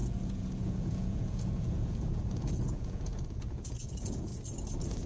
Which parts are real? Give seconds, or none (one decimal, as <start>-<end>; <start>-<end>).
4.3-5.1